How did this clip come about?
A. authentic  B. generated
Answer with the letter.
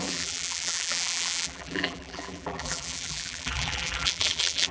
B